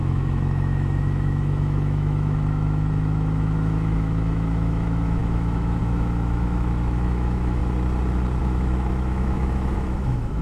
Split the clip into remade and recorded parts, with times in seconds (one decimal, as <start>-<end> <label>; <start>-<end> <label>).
0.0-7.6 remade; 7.6-8.4 recorded; 8.4-10.4 remade